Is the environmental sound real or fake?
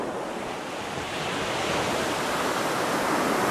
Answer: real